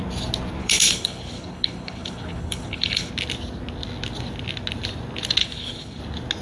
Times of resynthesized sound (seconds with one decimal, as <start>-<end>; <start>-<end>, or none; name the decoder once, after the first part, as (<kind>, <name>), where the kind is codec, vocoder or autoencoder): 0.6-3.1 (codec, HILCodec); 5.4-6.0